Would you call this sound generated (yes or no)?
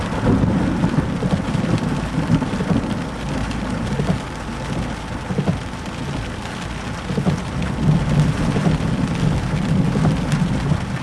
no